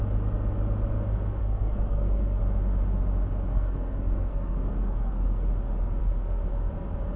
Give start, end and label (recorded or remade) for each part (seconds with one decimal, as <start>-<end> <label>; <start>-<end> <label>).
0.0-1.4 recorded; 1.4-2.4 remade; 2.4-3.5 recorded; 3.5-5.5 remade; 5.5-6.0 recorded; 6.0-6.7 remade; 6.7-7.2 recorded